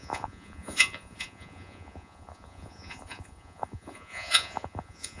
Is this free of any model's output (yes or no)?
no